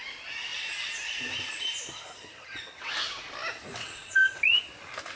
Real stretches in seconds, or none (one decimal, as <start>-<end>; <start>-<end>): 0.0-2.3; 2.9-3.8; 4.4-5.2

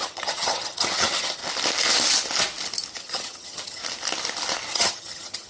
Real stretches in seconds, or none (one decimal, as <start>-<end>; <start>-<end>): 1.4-3.0; 3.8-4.7

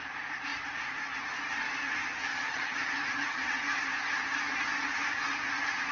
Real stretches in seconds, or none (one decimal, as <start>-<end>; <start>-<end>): 0.0-2.3; 3.5-5.9

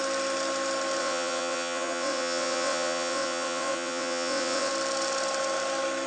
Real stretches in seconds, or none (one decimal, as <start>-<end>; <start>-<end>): 0.0-1.0; 4.7-6.1

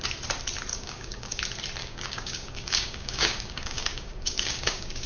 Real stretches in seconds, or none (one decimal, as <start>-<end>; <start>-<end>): 0.0-0.7; 1.4-1.8

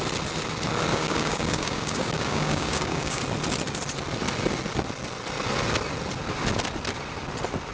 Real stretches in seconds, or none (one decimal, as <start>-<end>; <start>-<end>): 0.0-0.9; 3.2-7.7

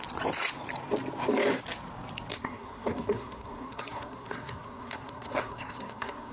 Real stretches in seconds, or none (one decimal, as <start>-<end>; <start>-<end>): 0.0-2.3